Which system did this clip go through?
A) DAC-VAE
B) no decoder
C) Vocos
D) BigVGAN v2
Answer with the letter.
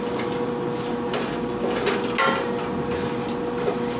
B